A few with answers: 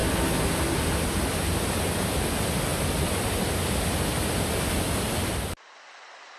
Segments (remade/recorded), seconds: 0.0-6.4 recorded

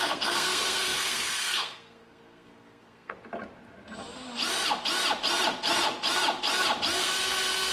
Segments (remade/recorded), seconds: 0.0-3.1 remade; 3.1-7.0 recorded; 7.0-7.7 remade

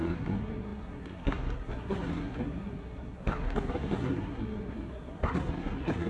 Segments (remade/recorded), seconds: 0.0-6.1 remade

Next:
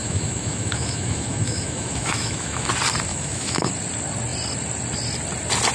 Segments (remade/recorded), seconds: 0.0-2.7 remade; 2.7-3.1 recorded; 3.1-3.7 remade; 3.7-5.7 recorded

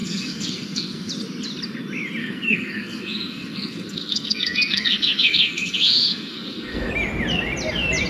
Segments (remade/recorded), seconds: 0.0-1.1 remade; 1.1-2.2 recorded; 2.2-6.9 remade; 6.9-8.1 recorded

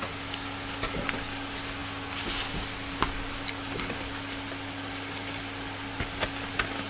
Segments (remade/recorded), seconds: 0.0-6.9 recorded

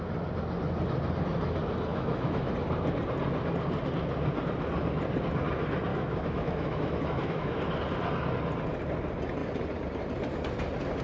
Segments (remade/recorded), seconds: 0.0-1.9 recorded; 1.9-2.5 remade; 2.5-5.9 recorded; 5.9-7.6 remade; 7.6-11.0 recorded

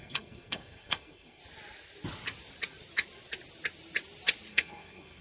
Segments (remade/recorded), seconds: 0.0-1.4 remade; 1.4-4.5 recorded; 4.5-5.2 remade